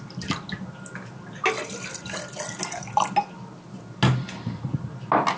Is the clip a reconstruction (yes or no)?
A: no